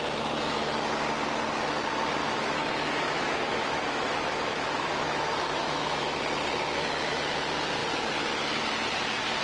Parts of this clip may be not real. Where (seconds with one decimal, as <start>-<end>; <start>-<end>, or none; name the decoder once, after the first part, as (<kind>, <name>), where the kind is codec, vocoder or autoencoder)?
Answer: 2.2-6.2 (autoencoder, DAC-VAE)